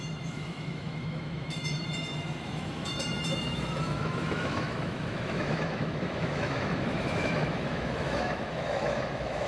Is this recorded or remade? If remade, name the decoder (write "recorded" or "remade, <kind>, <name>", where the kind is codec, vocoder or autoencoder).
remade, autoencoder, DAC-VAE